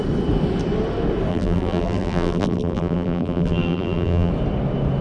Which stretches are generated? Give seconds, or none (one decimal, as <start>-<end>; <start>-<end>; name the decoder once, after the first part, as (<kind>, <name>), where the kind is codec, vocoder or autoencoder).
1.3-4.3 (vocoder, BigVGAN v2)

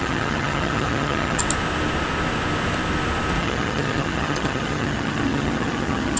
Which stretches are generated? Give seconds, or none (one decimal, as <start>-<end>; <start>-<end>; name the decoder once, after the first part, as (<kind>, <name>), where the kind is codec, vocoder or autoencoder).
0.0-1.4 (vocoder, HiFi-GAN); 3.4-6.2

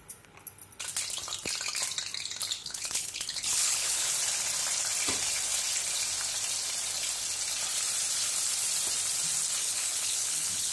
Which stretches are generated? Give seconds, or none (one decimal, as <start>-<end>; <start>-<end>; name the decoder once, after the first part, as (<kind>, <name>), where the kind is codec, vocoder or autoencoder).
2.6-4.1 (codec, HILCodec); 9.6-10.7